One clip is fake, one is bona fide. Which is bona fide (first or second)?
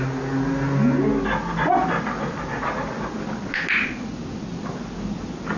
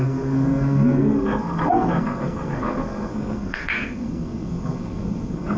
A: first